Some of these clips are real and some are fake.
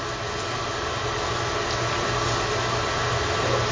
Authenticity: real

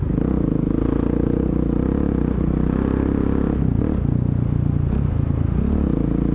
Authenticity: real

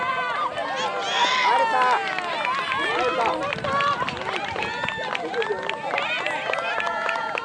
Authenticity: real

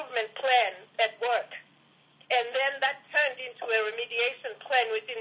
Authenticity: real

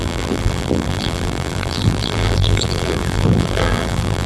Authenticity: fake